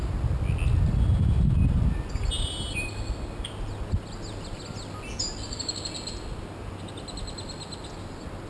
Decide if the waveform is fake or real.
real